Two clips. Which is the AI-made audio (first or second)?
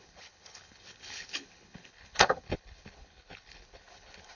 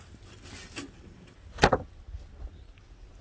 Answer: first